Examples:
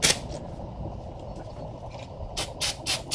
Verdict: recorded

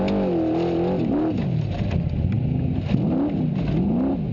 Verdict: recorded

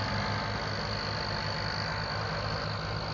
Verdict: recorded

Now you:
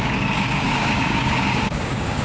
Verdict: remade